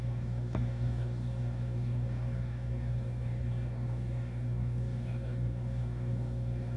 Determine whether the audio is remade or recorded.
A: remade